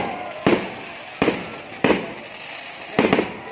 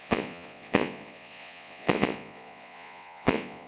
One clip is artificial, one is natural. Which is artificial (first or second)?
second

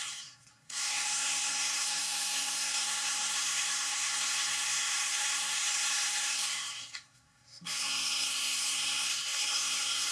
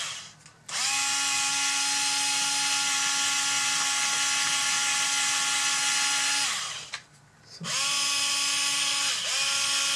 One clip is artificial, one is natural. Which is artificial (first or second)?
first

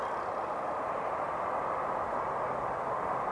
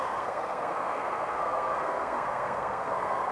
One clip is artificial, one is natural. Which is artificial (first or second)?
second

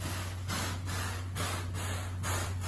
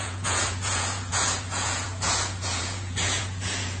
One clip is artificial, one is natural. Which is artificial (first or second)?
second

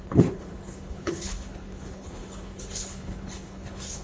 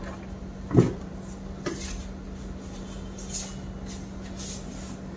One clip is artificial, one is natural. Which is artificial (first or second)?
first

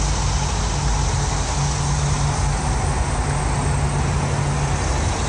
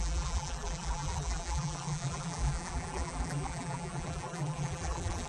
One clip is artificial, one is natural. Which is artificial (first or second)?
second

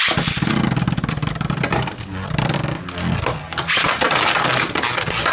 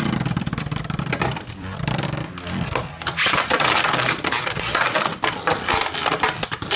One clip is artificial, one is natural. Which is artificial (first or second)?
second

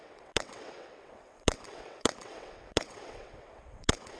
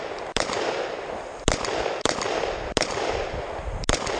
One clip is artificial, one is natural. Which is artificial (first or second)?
first